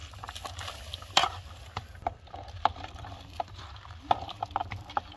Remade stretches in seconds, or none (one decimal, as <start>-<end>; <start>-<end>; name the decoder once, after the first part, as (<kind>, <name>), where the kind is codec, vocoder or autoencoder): 0.7-5.2 (vocoder, BigVGAN v2)